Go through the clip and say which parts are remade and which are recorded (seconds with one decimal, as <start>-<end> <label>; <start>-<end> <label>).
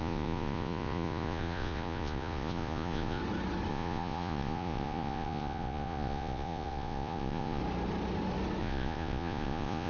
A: 0.0-3.2 remade; 3.2-3.7 recorded; 3.7-7.6 remade; 7.6-8.6 recorded; 8.6-9.9 remade